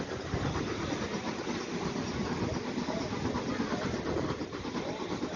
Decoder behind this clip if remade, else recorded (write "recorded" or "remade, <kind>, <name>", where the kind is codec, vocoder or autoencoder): recorded